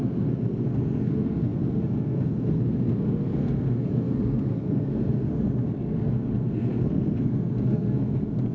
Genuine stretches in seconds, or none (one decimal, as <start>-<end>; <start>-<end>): none